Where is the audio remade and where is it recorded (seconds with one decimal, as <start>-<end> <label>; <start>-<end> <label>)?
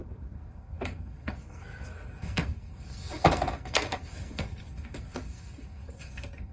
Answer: 0.0-6.5 remade